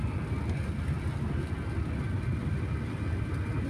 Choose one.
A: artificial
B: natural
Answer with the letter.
B